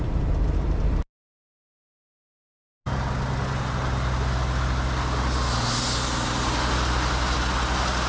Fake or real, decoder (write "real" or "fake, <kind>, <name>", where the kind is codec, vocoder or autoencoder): real